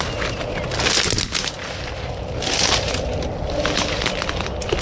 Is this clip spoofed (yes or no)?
no